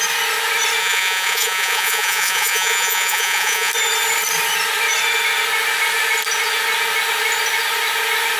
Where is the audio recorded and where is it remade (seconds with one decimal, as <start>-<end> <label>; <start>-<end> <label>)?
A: 0.0-0.8 recorded; 0.8-3.7 remade; 3.7-8.4 recorded